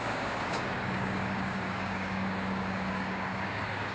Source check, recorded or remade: remade